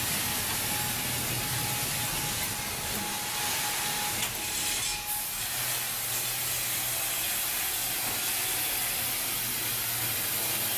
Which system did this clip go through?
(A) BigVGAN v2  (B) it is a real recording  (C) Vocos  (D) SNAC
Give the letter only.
B